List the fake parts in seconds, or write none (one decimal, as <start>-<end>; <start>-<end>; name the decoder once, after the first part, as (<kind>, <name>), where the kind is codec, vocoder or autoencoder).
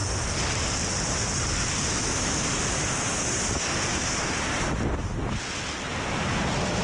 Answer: 0.0-1.7 (vocoder, BigVGAN v2); 3.9-4.9